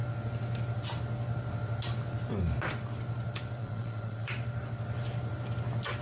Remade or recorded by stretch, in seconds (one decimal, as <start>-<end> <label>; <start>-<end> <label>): 0.0-3.6 recorded; 3.6-4.3 remade; 4.3-6.0 recorded